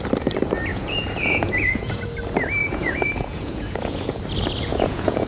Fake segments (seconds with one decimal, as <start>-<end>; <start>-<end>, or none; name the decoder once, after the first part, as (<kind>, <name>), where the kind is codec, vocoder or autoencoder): 0.7-2.0 (vocoder, Vocos); 2.6-4.2; 4.7-5.3